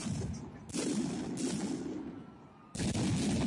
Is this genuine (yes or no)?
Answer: yes